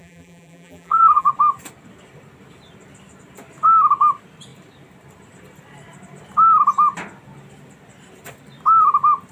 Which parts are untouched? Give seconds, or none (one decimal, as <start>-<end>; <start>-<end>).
1.3-9.3